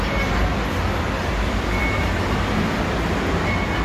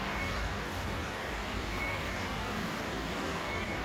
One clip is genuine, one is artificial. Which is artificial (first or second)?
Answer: second